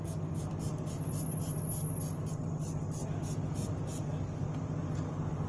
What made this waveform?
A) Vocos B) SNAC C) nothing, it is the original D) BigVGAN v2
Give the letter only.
C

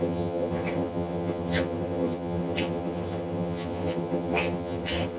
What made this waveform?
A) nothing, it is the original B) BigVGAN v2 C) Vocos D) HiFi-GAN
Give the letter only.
D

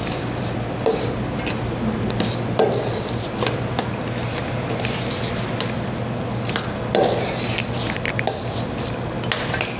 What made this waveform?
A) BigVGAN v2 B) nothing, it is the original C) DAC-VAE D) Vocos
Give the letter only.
B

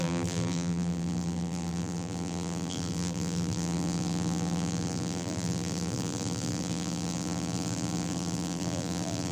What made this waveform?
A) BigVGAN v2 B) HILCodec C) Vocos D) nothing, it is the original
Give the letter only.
A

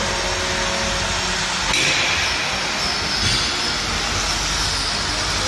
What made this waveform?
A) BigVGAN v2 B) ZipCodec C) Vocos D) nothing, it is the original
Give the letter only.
D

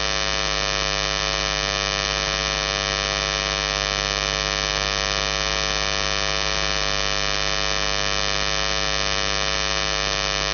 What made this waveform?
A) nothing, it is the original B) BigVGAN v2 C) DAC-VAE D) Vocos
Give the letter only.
A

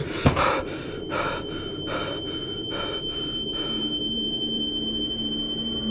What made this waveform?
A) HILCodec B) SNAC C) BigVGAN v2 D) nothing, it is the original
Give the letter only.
C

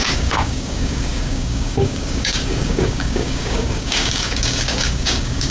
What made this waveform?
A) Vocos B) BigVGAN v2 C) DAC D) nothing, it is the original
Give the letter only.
C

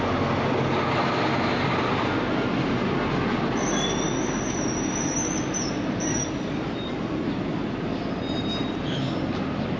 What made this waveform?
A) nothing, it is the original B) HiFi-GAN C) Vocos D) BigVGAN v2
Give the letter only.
A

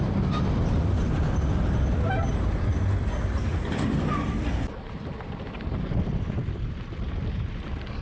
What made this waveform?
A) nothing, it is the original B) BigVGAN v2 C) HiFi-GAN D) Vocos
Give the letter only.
B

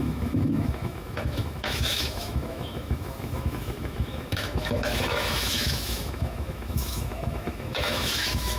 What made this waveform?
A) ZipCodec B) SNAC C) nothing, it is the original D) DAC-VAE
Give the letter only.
D